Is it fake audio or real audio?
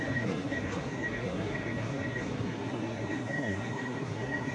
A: fake